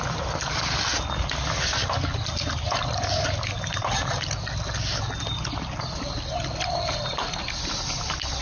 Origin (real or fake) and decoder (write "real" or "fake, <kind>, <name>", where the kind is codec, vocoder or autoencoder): real